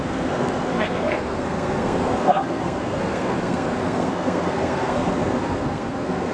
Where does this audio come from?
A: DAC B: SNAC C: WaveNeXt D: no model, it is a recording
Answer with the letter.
B